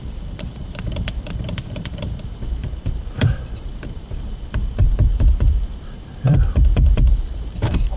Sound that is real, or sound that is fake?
fake